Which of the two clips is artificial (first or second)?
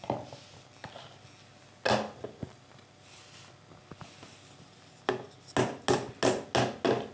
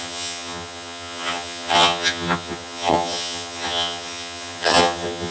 second